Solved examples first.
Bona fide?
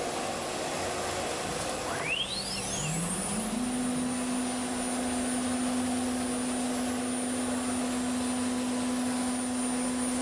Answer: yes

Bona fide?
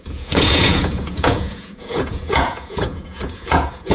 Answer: no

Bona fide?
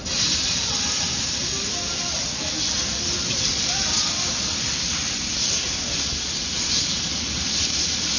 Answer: yes